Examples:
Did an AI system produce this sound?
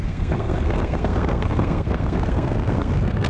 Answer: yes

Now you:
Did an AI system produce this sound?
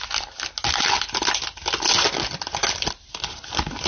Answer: no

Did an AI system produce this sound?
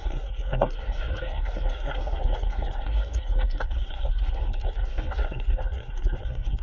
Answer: yes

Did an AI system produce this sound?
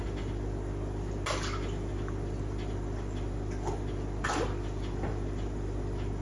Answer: no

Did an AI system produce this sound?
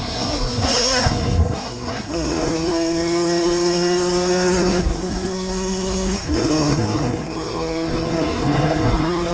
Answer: yes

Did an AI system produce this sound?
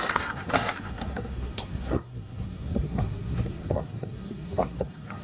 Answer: yes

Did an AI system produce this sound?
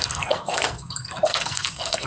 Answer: yes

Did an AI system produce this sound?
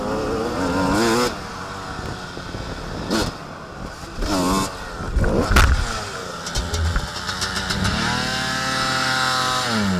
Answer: no